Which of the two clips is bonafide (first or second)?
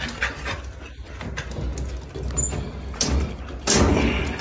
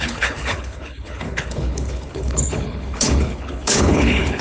first